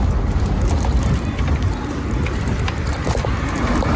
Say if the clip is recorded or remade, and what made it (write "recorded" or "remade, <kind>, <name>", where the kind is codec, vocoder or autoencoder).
recorded